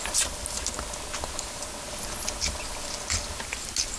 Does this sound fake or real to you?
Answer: real